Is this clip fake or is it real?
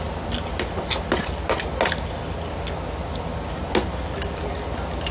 real